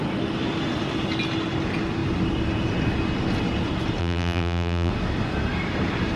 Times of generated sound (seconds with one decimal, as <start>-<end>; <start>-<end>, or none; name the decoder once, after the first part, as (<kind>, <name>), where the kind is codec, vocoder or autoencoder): 4.0-4.9 (vocoder, BigVGAN v2)